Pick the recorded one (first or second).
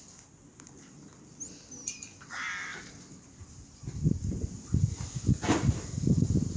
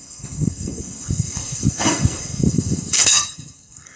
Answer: first